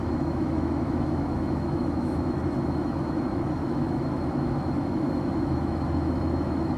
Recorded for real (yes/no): no